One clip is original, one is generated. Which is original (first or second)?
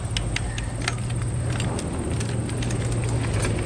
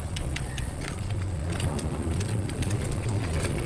first